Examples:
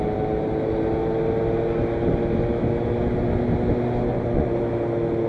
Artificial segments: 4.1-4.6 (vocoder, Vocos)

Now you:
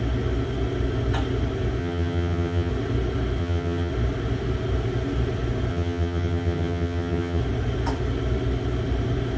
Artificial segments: 1.8-2.7 (vocoder, HiFi-GAN); 3.4-3.9; 5.7-7.4

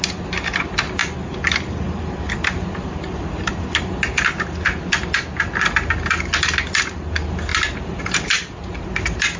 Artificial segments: 7.5-9.4 (vocoder, BigVGAN v2)

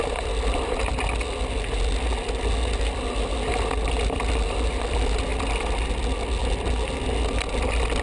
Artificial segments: none

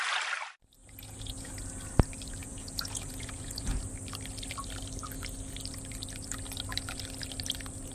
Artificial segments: 0.8-1.5 (vocoder, Vocos); 2.4-3.8

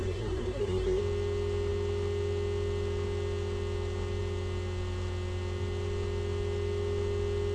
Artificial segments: 0.0-1.0 (codec, SNAC)

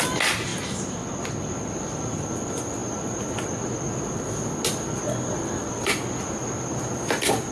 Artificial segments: none